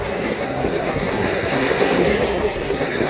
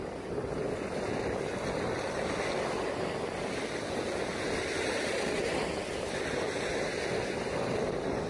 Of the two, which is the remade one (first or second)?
first